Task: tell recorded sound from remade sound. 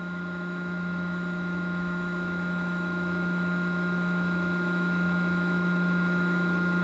remade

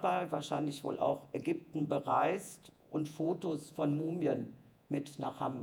remade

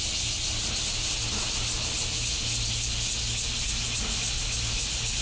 recorded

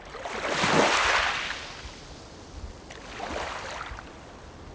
recorded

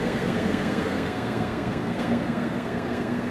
remade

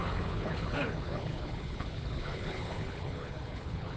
remade